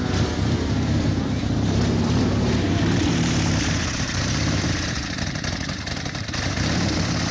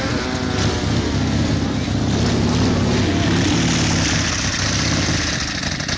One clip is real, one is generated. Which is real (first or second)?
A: second